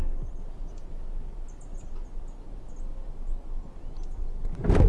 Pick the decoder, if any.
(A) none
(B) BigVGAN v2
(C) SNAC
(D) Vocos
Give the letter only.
A